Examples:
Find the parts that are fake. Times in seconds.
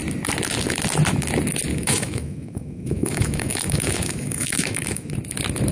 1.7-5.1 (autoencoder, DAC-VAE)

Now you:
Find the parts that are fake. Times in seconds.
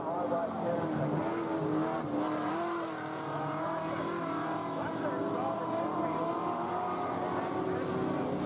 none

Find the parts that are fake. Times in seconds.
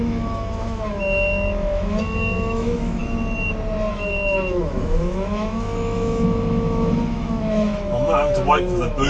0.0-3.0 (autoencoder, DAC-VAE); 3.9-9.1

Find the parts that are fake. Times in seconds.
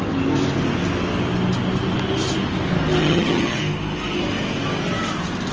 3.0-3.6 (vocoder, HiFi-GAN)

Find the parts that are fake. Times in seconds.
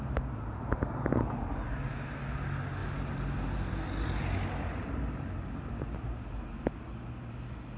none